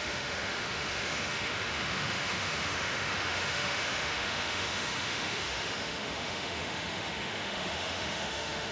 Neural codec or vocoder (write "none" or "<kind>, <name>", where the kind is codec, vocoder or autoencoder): autoencoder, DAC-VAE